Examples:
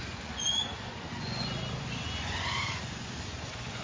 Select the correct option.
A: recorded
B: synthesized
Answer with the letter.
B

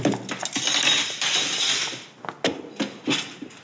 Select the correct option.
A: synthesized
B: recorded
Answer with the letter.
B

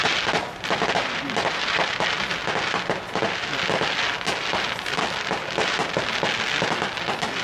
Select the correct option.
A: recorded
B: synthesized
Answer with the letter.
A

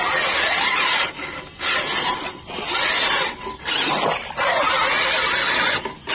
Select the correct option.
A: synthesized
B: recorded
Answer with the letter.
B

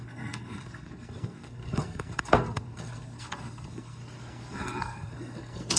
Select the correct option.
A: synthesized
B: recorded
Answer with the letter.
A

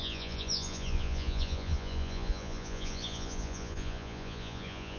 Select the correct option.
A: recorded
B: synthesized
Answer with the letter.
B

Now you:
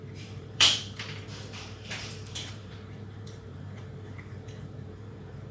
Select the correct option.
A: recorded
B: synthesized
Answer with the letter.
B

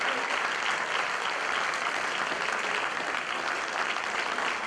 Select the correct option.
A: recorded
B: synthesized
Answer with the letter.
A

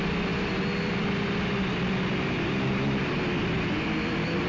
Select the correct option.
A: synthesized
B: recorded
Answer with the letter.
A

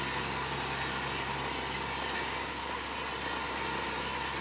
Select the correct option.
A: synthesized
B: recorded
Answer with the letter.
B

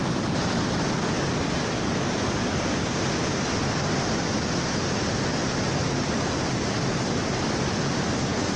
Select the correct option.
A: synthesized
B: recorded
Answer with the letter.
B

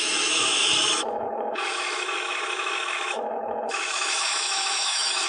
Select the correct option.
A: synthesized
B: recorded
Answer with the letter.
A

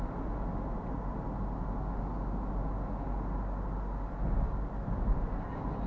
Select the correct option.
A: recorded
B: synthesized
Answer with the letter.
A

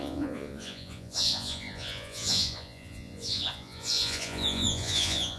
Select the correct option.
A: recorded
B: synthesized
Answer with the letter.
B